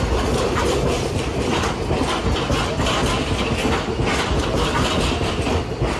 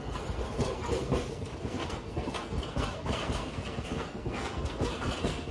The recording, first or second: first